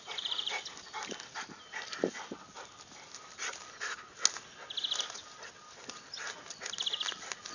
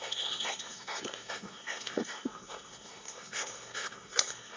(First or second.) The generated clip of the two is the second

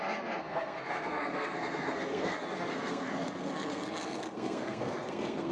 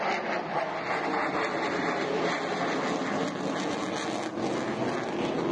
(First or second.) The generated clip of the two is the first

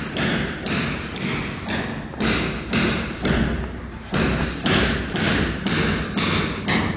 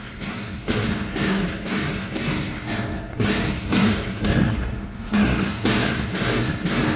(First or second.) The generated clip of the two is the second